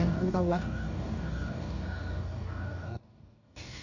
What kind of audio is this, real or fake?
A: fake